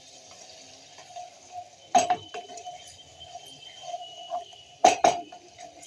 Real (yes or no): no